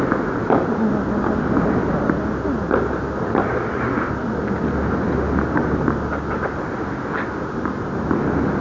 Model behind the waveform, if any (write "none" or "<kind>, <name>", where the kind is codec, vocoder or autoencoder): none